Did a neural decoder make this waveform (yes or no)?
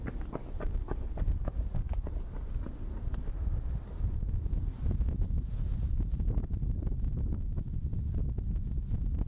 no